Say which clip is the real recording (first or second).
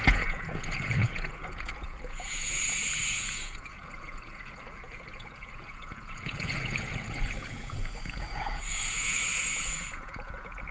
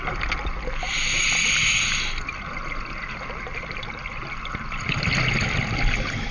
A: second